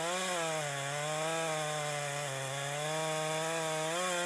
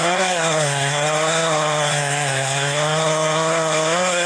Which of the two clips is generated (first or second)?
second